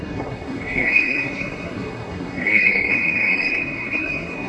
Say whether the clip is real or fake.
fake